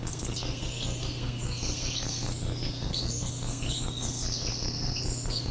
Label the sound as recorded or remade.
remade